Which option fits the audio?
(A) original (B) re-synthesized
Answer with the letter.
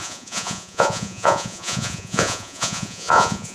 B